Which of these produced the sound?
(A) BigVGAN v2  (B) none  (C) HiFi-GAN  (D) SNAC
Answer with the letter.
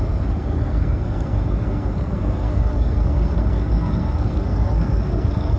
D